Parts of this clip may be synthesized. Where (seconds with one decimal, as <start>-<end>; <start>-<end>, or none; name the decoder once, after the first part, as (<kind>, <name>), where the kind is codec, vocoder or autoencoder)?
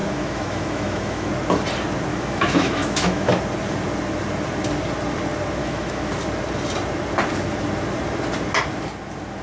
0.0-1.3 (autoencoder, DAC-VAE); 2.1-3.4; 5.6-6.1